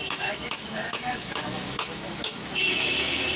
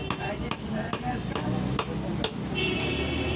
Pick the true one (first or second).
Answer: second